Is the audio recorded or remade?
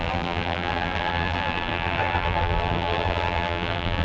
remade